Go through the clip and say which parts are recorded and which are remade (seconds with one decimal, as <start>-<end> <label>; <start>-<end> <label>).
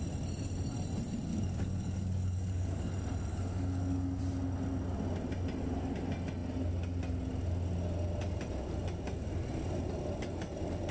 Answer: 0.0-1.3 recorded; 1.3-2.9 remade; 2.9-3.3 recorded; 3.3-4.2 remade; 4.2-10.9 recorded